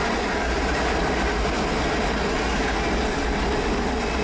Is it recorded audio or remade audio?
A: recorded